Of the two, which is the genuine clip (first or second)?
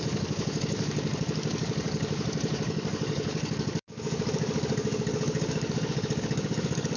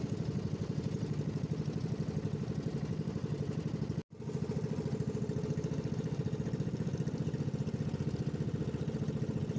second